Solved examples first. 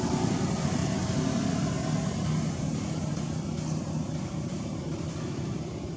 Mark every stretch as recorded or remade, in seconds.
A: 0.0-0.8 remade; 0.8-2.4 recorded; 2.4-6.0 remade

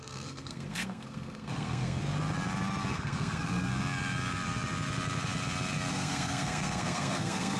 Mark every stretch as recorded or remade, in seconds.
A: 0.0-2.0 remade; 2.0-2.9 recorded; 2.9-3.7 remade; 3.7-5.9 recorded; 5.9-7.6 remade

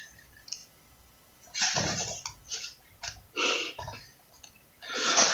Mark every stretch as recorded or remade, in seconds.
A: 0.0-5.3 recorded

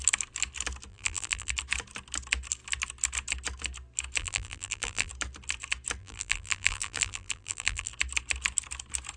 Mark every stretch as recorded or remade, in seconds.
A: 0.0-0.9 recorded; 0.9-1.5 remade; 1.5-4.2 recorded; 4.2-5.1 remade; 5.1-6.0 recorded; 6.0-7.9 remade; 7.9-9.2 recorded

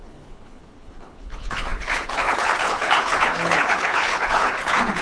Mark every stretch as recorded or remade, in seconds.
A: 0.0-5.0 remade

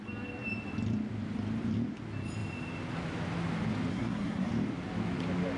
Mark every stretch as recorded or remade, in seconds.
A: 0.0-3.9 recorded; 3.9-4.5 remade; 4.5-5.6 recorded

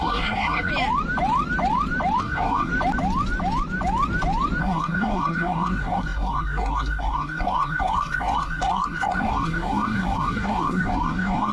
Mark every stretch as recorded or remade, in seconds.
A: 0.0-0.7 remade; 0.7-2.2 recorded; 2.2-2.7 remade; 2.7-4.6 recorded; 4.6-11.5 remade

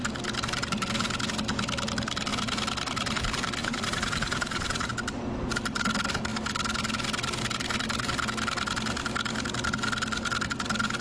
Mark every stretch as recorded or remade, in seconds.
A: 0.0-3.6 recorded; 3.6-4.9 remade; 4.9-11.0 recorded